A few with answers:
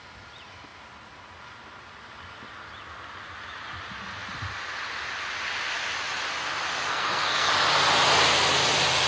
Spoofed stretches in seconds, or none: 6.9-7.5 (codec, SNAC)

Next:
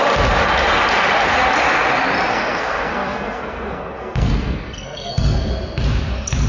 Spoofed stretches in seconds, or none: 2.3-5.5 (codec, SNAC)

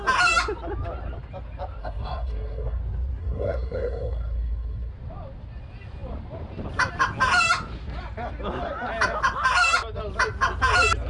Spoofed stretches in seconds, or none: 1.8-2.8 (codec, SNAC); 3.2-4.9

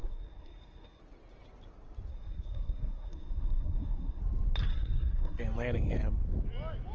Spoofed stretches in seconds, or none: 0.0-1.0 (codec, SNAC); 2.1-4.2; 4.7-5.4

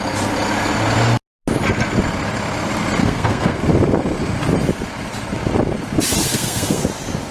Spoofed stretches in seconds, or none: 3.0-3.6 (codec, SNAC); 6.2-6.8